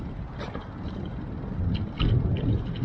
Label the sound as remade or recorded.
recorded